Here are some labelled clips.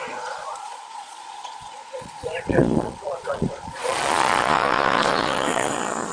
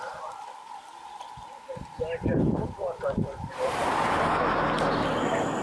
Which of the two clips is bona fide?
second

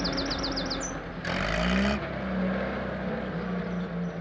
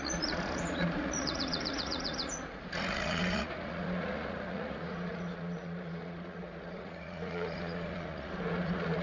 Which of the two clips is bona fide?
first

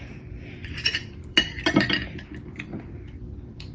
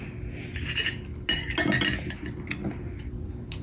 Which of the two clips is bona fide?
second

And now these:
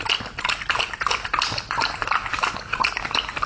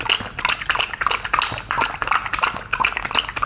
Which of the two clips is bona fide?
second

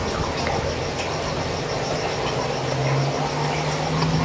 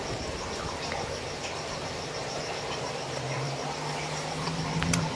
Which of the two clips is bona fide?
first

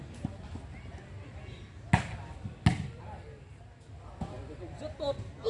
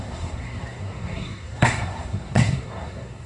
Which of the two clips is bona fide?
first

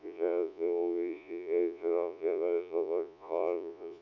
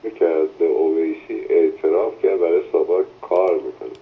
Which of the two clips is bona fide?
second